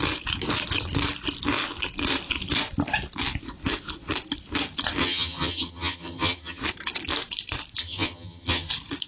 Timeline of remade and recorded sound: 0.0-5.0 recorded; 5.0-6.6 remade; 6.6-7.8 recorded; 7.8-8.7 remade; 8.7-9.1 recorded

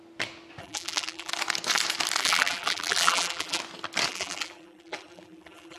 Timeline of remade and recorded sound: 0.0-0.6 recorded; 0.6-1.3 remade; 1.3-2.2 recorded; 2.2-3.6 remade; 3.6-4.1 recorded; 4.1-5.8 remade

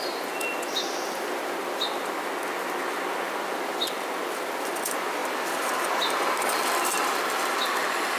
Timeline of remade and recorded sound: 0.0-8.2 recorded

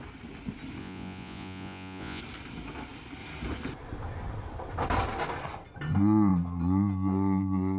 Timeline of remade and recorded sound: 0.0-0.8 recorded; 0.8-2.2 remade; 2.2-7.8 recorded

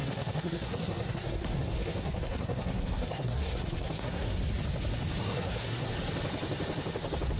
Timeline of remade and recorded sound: 0.0-4.4 remade; 4.4-5.2 recorded; 5.2-5.9 remade; 5.9-7.4 recorded

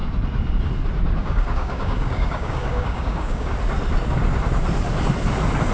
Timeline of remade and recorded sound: 0.0-1.2 recorded; 1.2-3.5 remade; 3.5-5.7 recorded